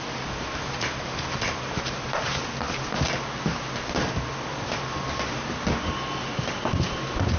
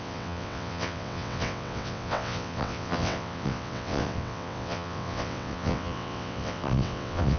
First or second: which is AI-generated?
second